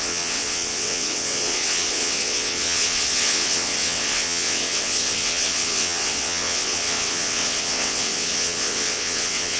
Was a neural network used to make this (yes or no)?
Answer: yes